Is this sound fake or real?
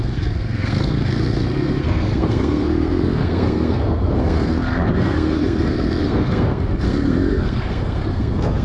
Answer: fake